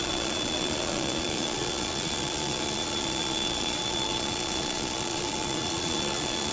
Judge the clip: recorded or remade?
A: remade